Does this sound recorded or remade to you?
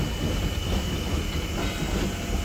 recorded